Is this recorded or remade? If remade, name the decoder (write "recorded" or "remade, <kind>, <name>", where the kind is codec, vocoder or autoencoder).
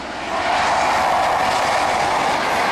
recorded